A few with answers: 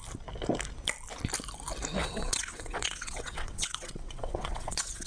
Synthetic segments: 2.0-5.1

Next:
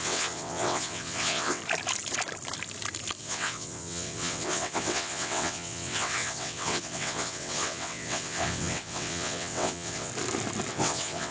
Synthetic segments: 0.0-1.6; 3.2-10.1; 10.7-11.3

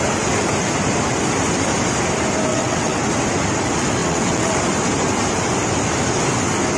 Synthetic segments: 2.5-3.0; 4.0-4.6

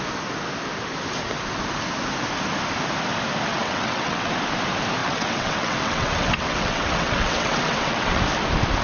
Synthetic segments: 3.5-4.3; 5.0-8.2